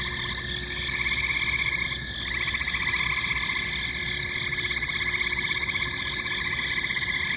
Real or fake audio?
real